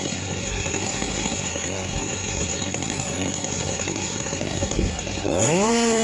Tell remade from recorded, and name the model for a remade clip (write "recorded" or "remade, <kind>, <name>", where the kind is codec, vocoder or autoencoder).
remade, codec, SNAC